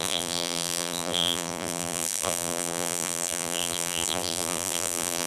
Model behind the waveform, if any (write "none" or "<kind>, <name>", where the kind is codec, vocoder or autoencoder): vocoder, BigVGAN v2